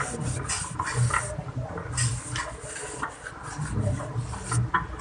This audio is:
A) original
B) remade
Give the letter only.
A